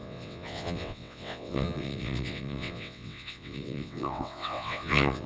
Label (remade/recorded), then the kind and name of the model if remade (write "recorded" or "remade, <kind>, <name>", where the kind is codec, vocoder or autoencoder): remade, vocoder, WaveNeXt